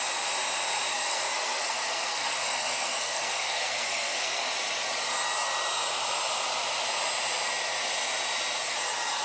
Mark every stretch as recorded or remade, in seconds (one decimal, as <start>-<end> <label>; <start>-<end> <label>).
0.0-0.9 recorded; 0.9-4.5 remade; 4.5-9.2 recorded